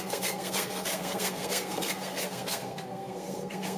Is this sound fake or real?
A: fake